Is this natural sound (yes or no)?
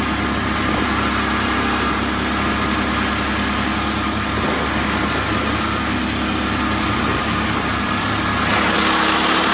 yes